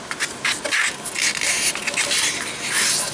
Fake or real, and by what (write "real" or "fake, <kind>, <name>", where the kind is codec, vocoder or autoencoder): real